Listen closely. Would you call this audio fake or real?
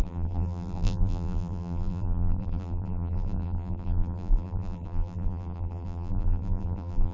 fake